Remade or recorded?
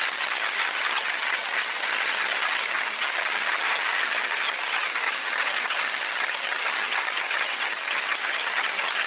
remade